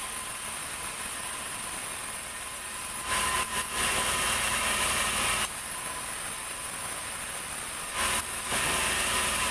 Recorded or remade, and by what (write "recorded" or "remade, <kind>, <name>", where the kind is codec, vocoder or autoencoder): recorded